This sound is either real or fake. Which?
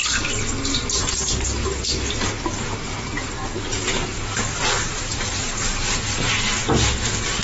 real